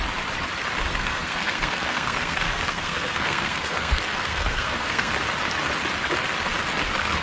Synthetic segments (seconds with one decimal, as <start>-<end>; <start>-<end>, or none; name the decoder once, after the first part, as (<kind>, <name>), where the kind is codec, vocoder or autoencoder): 0.9-5.1 (codec, SNAC)